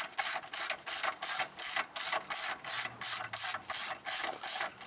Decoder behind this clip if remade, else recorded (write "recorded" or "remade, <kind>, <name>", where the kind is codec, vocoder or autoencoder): recorded